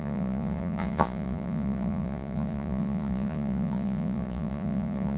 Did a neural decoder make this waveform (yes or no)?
yes